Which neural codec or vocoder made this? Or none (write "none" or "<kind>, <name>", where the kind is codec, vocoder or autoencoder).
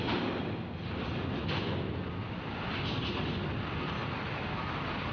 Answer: none